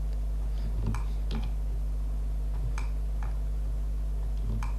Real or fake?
real